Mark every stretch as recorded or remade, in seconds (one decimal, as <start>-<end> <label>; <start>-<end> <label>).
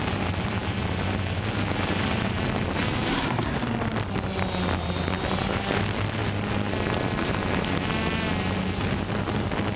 0.0-3.1 recorded; 3.1-3.6 remade; 3.6-9.8 recorded